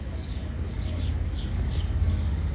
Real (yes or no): no